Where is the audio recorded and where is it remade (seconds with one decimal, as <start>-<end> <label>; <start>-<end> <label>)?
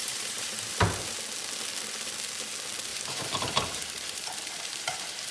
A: 0.0-0.7 remade; 0.7-2.9 recorded; 2.9-5.3 remade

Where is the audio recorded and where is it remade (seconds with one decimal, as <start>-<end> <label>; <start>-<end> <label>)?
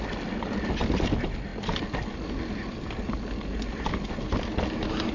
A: 0.0-5.1 recorded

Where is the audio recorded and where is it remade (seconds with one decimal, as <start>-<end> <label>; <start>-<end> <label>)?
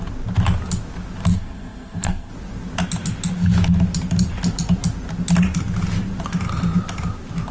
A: 0.0-1.3 recorded; 1.3-2.3 remade; 2.3-7.5 recorded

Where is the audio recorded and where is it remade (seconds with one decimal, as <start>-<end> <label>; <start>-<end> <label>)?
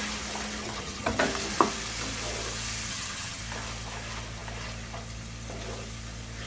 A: 0.0-0.6 recorded; 0.6-1.2 remade; 1.2-2.9 recorded; 2.9-3.4 remade; 3.4-6.5 recorded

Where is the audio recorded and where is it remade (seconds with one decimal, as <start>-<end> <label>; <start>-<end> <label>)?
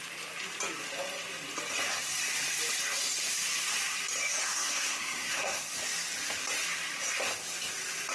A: 0.0-4.4 recorded; 4.4-5.7 remade; 5.7-8.1 recorded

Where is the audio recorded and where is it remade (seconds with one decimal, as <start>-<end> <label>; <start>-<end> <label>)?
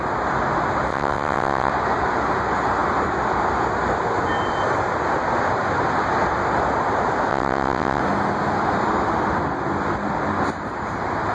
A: 0.0-0.9 recorded; 0.9-1.7 remade; 1.7-7.3 recorded; 7.3-8.0 remade; 8.0-11.3 recorded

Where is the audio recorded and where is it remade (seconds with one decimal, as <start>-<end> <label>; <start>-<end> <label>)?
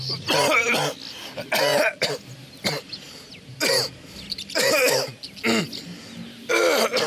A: 0.0-7.1 recorded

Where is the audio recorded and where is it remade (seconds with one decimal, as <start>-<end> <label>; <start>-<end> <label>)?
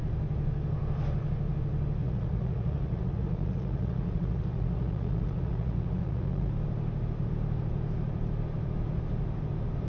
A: 0.0-2.0 recorded; 2.0-6.5 remade; 6.5-9.9 recorded